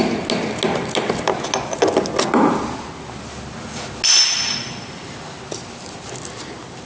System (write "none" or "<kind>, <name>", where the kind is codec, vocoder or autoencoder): none